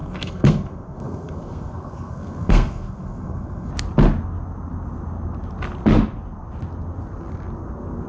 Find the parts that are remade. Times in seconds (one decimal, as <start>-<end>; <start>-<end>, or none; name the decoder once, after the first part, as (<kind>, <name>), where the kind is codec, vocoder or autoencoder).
0.0-3.7 (codec, SNAC)